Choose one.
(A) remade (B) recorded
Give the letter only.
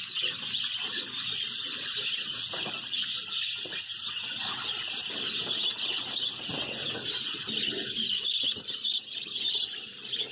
B